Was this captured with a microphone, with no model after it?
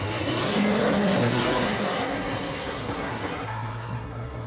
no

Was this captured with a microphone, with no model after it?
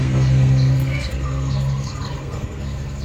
no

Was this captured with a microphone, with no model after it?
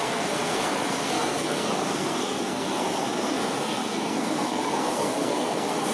no